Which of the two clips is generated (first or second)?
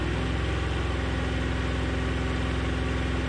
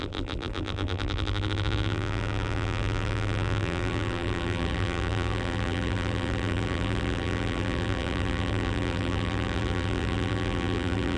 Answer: second